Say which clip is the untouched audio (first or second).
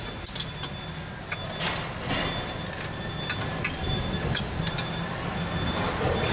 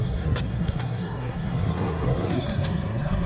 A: first